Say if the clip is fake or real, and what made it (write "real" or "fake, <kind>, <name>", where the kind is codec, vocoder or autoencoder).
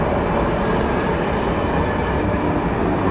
real